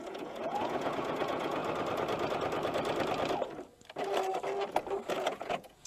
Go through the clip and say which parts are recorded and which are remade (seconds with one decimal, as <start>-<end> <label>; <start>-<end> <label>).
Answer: 0.0-1.6 remade; 1.6-5.1 recorded; 5.1-5.9 remade